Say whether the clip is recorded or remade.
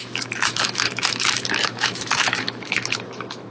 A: remade